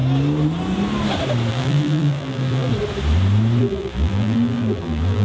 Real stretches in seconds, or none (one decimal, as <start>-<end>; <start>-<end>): 0.0-1.5; 2.7-3.6